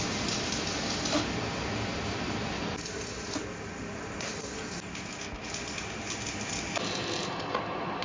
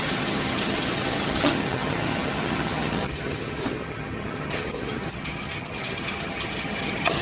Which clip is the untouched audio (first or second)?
first